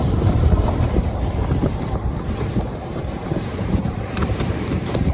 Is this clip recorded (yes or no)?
no